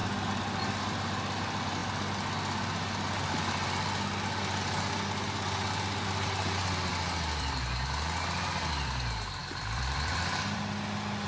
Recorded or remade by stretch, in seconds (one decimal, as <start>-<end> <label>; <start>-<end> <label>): 0.0-6.9 recorded; 6.9-7.6 remade; 7.6-9.4 recorded; 9.4-11.3 remade